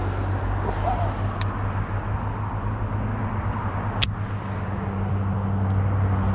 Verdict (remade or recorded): recorded